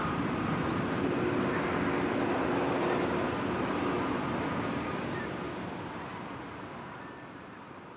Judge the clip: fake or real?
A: real